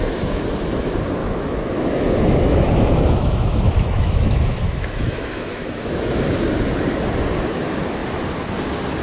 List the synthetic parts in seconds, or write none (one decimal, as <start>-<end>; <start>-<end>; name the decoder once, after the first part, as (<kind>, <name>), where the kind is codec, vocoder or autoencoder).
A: 1.2-6.1 (autoencoder, DAC-VAE)